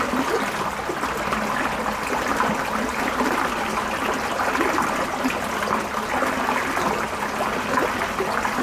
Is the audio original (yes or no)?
yes